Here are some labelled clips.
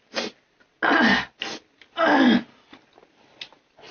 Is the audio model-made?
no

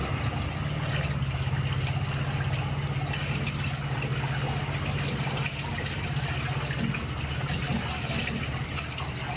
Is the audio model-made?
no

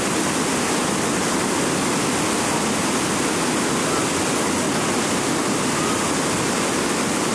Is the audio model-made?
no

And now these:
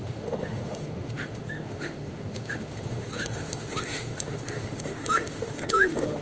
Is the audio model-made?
yes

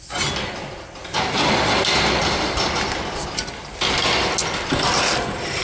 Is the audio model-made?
no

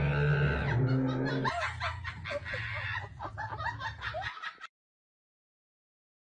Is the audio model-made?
no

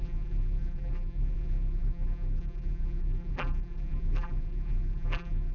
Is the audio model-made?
yes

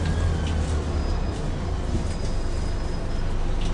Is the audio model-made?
no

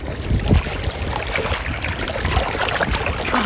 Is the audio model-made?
no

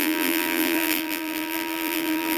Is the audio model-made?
yes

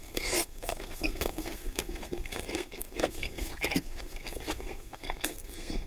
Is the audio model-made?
yes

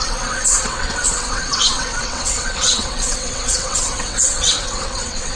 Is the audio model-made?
yes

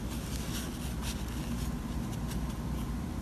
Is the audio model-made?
no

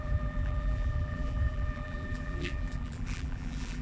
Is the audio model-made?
yes